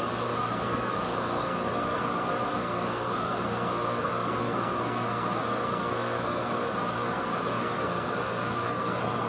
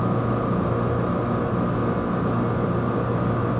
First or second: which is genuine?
second